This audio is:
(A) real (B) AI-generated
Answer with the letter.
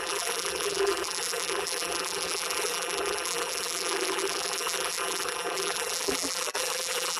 B